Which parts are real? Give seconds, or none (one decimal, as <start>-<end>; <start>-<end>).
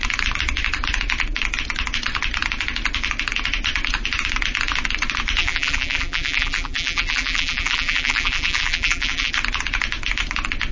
0.0-5.4; 9.3-10.7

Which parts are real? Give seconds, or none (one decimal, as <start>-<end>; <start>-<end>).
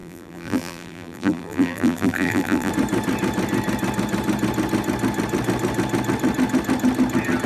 2.7-7.5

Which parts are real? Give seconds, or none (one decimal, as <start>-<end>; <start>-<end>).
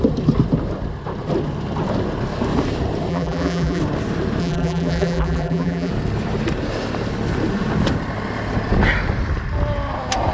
0.0-3.1; 3.8-4.4; 5.9-10.3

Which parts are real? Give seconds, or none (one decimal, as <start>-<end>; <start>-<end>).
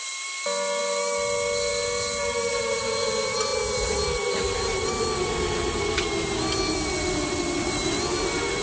0.0-8.6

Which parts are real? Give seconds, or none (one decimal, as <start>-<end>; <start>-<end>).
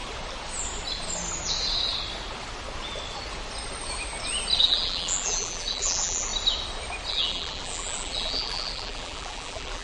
0.0-4.6; 6.3-7.1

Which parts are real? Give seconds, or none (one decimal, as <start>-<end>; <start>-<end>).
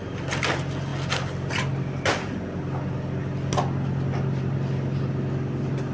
0.0-5.9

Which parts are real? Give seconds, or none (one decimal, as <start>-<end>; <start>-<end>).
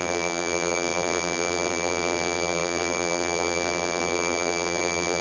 none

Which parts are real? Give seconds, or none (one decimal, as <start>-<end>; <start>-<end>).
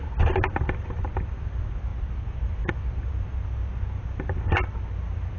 0.0-1.9; 2.7-5.4